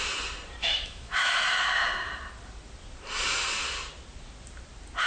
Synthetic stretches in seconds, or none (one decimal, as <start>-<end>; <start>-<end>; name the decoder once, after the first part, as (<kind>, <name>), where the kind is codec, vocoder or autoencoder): 0.6-1.3 (autoencoder, DAC-VAE)